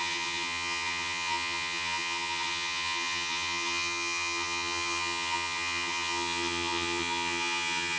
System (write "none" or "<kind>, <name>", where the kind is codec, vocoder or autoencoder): vocoder, HiFi-GAN